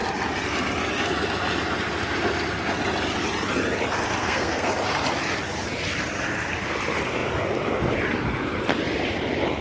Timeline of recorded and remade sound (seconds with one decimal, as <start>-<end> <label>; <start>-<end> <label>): 0.0-4.2 recorded; 4.2-4.7 remade; 4.7-9.6 recorded